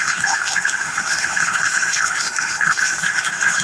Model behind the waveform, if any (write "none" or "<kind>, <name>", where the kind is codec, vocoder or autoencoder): autoencoder, DAC-VAE